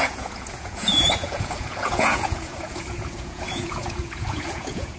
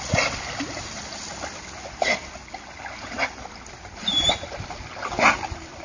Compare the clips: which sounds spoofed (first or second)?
first